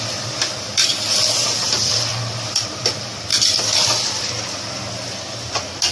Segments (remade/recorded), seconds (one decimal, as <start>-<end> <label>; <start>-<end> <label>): 0.0-5.9 recorded